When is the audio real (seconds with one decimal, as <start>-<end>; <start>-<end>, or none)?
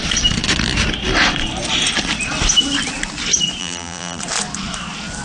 0.0-3.6; 4.2-5.2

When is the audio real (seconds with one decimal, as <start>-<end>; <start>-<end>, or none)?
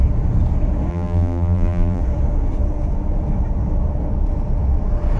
0.0-0.9; 2.0-5.2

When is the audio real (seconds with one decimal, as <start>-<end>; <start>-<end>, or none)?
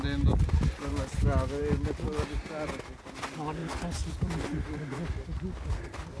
0.0-3.6; 5.1-6.2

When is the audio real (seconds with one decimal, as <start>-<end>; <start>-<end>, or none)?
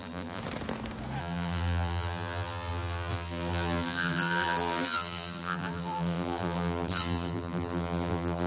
0.4-1.2